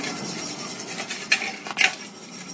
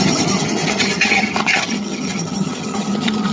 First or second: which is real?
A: first